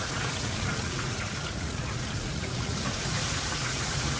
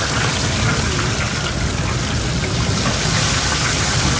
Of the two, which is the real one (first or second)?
second